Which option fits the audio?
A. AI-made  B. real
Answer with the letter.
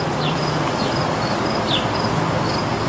B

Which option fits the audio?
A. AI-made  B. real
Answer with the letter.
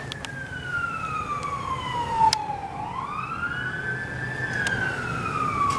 B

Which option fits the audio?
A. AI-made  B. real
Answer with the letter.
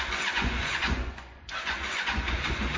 A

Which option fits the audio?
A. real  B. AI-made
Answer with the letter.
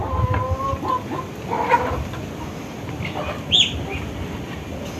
A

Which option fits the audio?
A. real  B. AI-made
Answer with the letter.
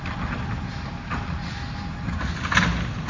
A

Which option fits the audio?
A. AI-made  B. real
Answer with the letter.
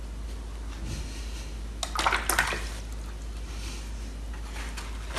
B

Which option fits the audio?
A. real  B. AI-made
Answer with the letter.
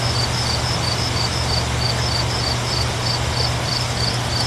A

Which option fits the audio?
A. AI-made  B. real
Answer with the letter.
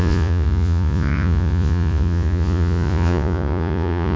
A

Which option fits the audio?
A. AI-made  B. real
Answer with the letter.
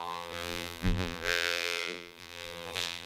A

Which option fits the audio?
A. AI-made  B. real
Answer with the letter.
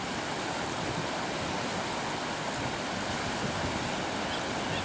B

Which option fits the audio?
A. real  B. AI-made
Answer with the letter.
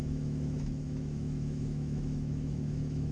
B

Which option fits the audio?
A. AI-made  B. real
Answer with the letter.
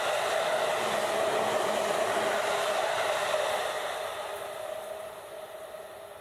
B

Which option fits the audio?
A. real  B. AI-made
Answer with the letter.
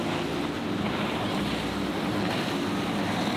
A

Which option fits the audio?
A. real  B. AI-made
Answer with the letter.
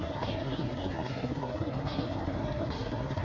B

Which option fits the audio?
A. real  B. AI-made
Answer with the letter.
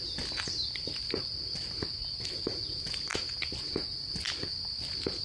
A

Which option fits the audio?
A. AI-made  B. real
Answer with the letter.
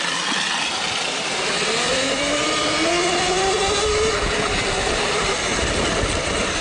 B